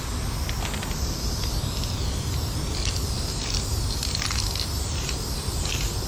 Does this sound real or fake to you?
real